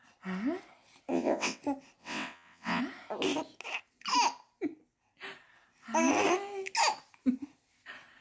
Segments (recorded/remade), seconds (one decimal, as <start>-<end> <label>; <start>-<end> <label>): 0.0-1.1 recorded; 1.1-1.6 remade; 1.6-2.0 recorded; 2.0-2.8 remade; 2.8-8.2 recorded